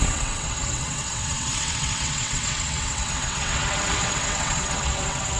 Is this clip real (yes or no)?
no